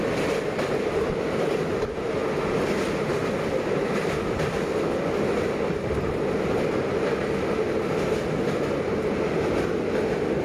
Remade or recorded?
recorded